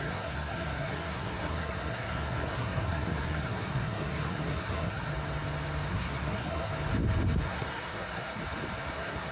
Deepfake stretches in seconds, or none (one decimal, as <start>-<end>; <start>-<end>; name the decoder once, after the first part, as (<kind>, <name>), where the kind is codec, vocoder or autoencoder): 0.0-5.1 (codec, SNAC); 5.9-6.7; 7.4-8.4; 8.9-9.3